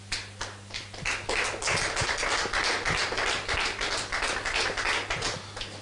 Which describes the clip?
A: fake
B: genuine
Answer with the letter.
B